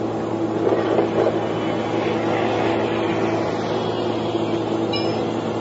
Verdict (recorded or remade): recorded